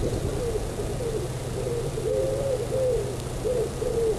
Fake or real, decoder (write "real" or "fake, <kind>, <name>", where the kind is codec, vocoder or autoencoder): real